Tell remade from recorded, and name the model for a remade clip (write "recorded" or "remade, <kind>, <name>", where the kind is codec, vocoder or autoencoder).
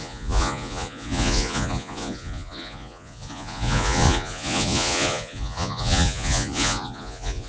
remade, vocoder, Vocos